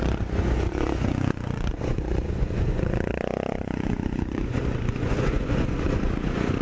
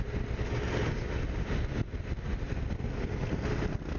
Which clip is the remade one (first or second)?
first